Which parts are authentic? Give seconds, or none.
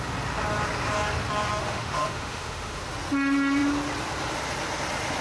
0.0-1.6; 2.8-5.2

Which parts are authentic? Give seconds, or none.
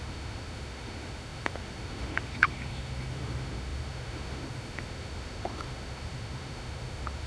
none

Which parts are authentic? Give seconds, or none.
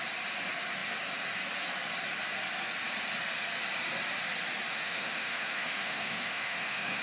0.0-4.7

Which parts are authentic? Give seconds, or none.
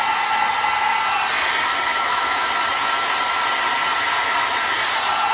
0.0-1.9; 2.5-5.3